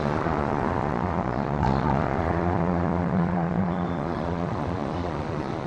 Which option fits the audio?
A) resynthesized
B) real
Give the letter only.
A